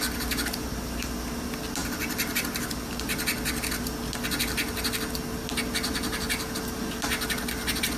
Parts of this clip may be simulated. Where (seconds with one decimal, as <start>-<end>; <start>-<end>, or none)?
none

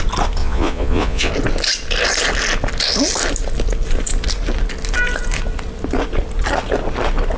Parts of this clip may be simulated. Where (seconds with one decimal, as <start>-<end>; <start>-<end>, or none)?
0.4-1.3